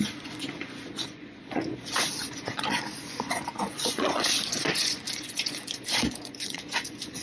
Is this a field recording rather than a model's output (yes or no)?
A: no